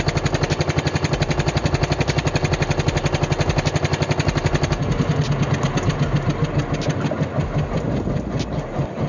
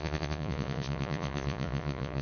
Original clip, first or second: first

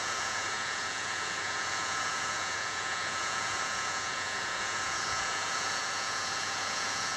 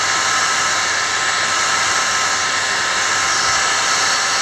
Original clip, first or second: second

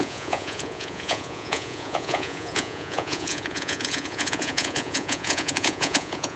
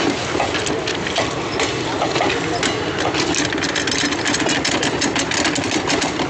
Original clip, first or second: second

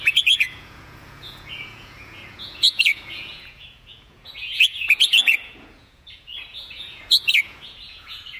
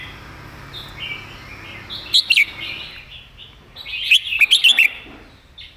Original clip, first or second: second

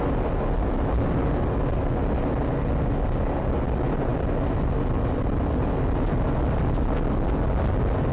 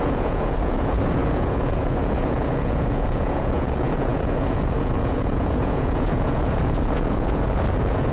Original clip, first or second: first